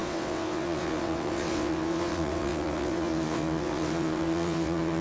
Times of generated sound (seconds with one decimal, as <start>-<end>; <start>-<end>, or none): 0.0-5.0